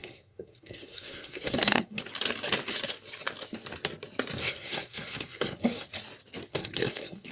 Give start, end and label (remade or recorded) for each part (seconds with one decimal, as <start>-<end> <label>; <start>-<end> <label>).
0.0-2.0 remade; 2.0-4.4 recorded; 4.4-5.9 remade; 5.9-6.5 recorded; 6.5-7.3 remade